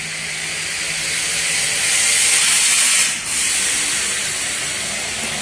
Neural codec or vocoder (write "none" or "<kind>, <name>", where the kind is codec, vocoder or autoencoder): none